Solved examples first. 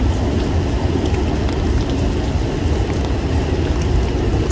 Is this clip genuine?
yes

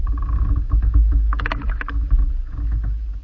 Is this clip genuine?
yes